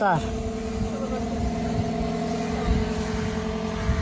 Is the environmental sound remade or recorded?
recorded